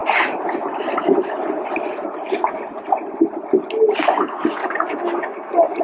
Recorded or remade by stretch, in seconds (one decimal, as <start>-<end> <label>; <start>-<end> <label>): 0.0-4.6 recorded; 4.6-5.8 remade